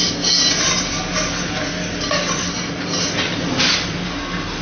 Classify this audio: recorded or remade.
recorded